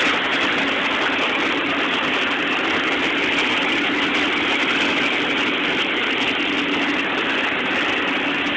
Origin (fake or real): real